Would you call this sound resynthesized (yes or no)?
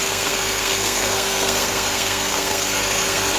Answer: yes